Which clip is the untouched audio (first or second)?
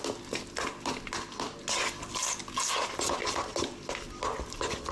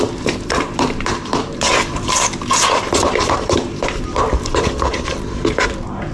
first